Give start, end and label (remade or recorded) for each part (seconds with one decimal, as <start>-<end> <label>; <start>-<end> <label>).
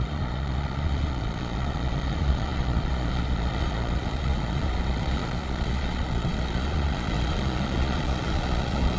0.0-9.0 remade